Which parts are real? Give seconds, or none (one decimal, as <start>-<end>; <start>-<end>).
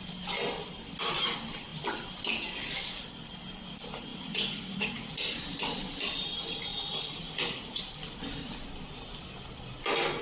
0.0-4.1; 5.1-6.7; 7.8-10.2